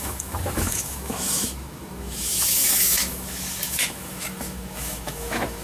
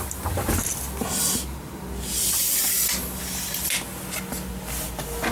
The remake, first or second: first